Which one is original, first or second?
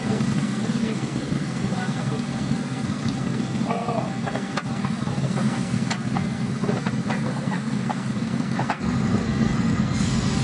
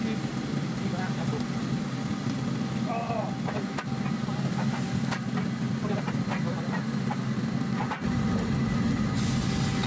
second